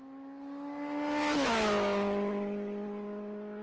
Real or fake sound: real